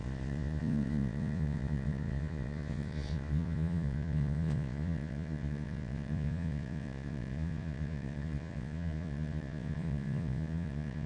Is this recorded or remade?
remade